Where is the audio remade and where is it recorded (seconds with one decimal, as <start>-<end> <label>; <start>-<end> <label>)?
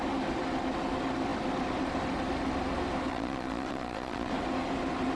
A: 0.0-3.1 recorded; 3.1-4.3 remade; 4.3-5.2 recorded